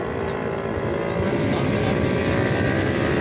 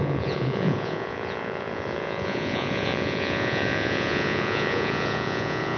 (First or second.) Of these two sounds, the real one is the first